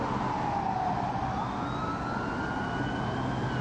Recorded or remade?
recorded